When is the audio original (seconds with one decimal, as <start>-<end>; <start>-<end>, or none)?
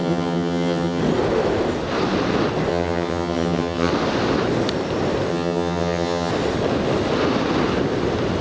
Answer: 1.0-2.7; 3.9-5.3; 6.3-8.4